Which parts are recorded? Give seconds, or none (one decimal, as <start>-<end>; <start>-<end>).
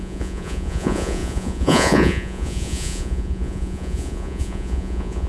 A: none